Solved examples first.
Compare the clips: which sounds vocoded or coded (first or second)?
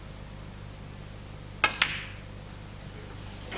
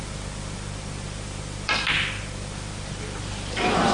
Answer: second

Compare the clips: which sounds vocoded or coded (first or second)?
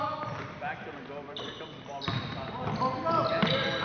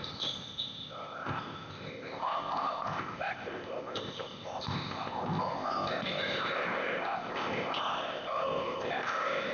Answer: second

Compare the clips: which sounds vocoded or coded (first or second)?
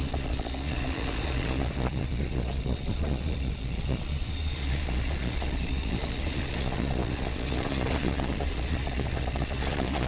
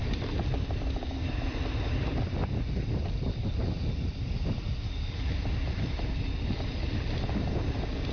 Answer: first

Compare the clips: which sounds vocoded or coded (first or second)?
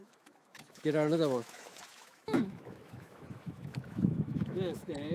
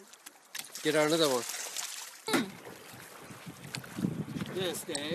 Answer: first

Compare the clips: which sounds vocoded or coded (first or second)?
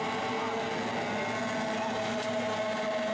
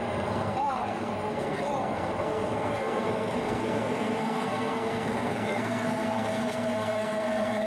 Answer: second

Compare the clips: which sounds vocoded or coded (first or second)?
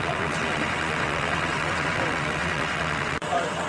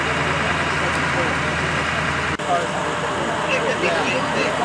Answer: first